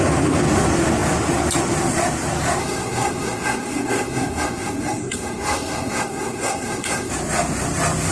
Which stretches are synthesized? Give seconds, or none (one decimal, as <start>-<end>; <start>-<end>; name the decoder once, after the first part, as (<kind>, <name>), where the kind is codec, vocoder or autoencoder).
2.6-7.1 (codec, SNAC)